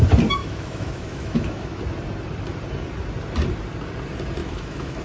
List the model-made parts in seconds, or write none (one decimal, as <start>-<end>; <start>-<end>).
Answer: 0.4-1.8; 4.4-5.0